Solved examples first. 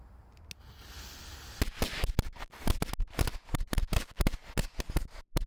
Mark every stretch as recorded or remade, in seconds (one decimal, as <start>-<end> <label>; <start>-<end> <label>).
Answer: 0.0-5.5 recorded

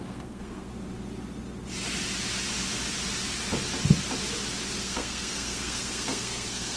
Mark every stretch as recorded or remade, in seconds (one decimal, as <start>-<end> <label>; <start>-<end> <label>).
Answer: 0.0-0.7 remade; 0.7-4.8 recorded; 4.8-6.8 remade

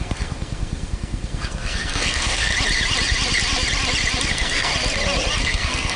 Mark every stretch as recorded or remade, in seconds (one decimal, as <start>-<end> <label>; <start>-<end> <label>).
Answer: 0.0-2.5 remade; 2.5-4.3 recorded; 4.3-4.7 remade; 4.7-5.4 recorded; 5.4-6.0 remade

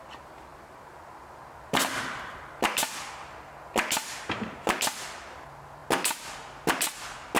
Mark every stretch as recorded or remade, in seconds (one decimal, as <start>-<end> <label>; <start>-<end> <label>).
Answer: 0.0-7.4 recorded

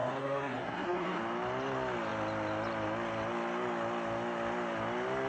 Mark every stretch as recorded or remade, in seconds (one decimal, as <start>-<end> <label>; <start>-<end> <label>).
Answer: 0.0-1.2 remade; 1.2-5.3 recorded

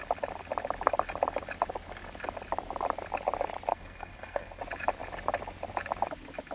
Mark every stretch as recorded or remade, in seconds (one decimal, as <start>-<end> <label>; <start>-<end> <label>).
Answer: 0.0-3.7 recorded; 3.7-4.6 remade; 4.6-6.5 recorded

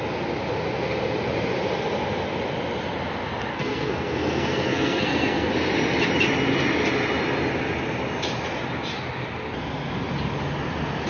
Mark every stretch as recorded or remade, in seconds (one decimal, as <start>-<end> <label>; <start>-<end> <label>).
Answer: 0.0-3.5 recorded; 3.5-5.5 remade; 5.5-11.1 recorded